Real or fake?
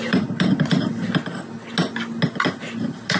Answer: real